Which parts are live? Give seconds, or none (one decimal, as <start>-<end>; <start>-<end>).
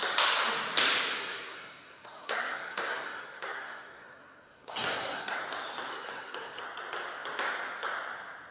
0.0-1.2; 5.4-5.9; 6.6-8.5